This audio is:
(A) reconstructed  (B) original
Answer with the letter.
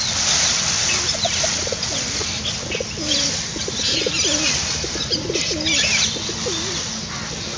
B